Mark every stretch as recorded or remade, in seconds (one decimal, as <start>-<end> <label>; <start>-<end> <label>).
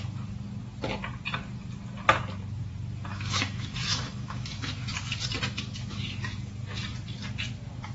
0.0-3.1 recorded; 3.1-4.7 remade; 4.7-7.9 recorded